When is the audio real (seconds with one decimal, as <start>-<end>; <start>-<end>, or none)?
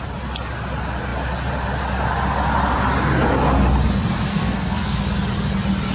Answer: 0.0-4.3; 5.0-5.9